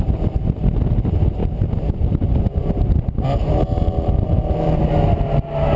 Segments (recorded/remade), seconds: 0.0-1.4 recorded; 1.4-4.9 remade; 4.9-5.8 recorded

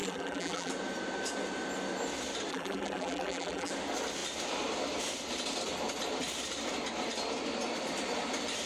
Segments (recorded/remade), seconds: 0.0-0.7 remade; 0.7-2.5 recorded; 2.5-3.7 remade; 3.7-8.7 recorded

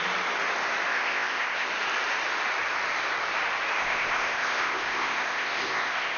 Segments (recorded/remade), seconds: 0.0-0.9 recorded; 0.9-1.7 remade; 1.7-3.8 recorded; 3.8-6.2 remade

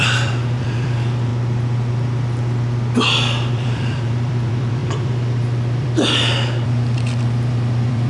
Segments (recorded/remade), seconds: 0.0-1.3 remade; 1.3-3.5 recorded; 3.5-8.1 remade

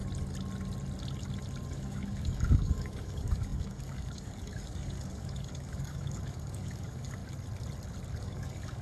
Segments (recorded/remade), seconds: 0.0-1.7 recorded; 1.7-7.2 remade; 7.2-8.2 recorded; 8.2-8.8 remade

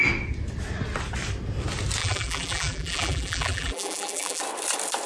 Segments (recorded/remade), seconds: 0.0-2.0 recorded; 2.0-4.4 remade; 4.4-5.1 recorded